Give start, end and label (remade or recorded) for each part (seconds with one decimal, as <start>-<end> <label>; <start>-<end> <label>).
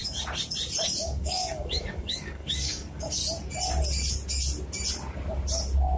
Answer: 0.0-1.0 recorded; 1.0-3.2 remade; 3.2-6.0 recorded